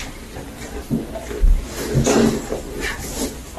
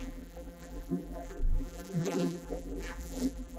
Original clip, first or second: first